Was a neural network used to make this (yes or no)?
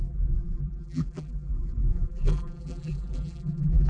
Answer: yes